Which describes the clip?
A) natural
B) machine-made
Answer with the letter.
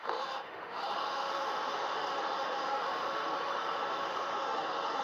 B